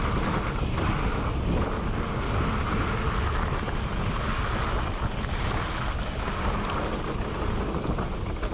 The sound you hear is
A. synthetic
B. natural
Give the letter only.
B